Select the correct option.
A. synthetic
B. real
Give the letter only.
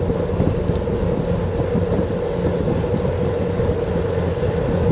B